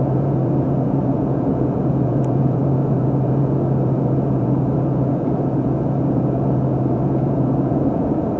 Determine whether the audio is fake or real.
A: fake